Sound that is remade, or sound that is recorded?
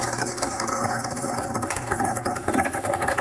remade